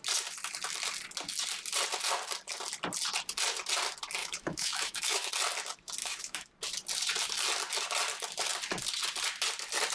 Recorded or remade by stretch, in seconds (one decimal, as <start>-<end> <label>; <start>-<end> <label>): 0.0-4.2 recorded; 4.2-5.3 remade; 5.3-6.0 recorded; 6.0-6.5 remade; 6.5-9.9 recorded